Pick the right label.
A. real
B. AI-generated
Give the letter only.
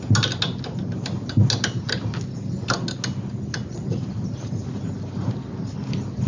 A